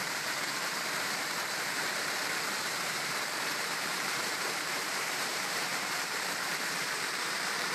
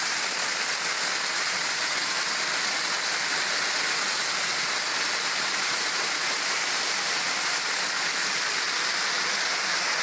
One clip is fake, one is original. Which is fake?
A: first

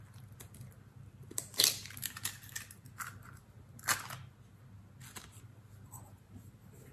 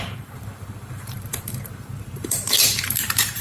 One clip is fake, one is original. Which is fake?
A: second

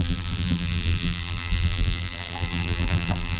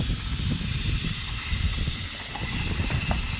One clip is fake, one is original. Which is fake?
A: first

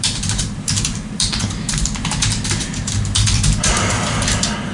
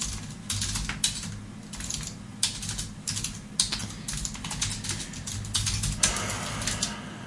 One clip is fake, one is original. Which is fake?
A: first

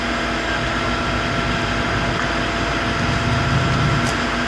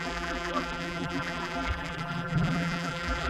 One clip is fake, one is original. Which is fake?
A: second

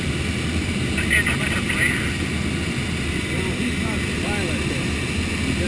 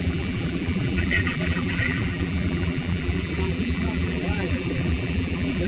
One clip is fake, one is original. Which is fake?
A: second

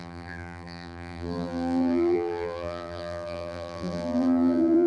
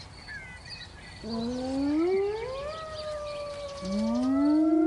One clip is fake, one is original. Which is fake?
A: first